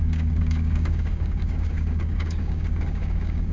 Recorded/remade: remade